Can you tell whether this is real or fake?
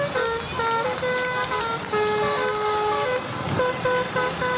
real